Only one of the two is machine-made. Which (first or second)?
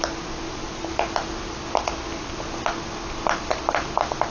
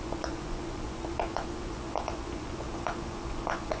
second